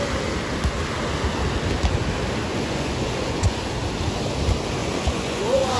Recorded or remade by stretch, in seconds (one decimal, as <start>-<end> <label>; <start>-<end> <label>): 0.0-2.5 recorded; 2.5-3.6 remade; 3.6-4.8 recorded; 4.8-5.8 remade